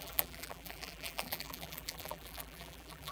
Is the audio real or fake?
fake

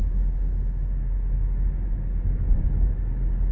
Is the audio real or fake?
real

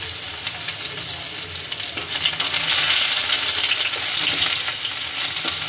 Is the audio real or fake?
real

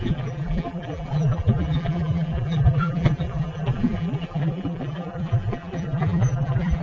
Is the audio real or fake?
fake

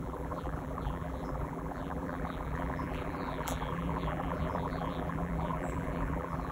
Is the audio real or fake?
fake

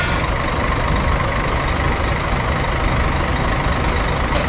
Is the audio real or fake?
real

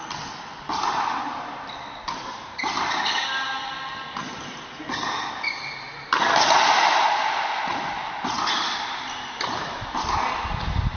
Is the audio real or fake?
real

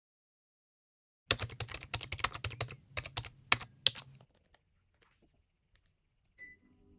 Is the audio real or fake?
real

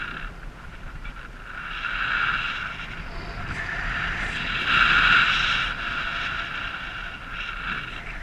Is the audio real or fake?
real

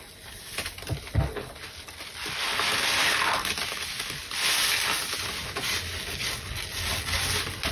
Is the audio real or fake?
real